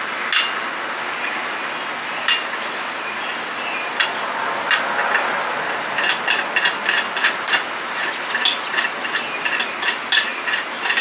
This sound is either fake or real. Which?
real